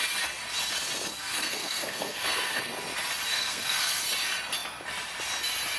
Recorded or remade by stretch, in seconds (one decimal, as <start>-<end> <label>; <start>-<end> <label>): 0.0-1.1 recorded; 1.1-2.6 remade; 2.6-3.3 recorded; 3.3-4.0 remade; 4.0-5.8 recorded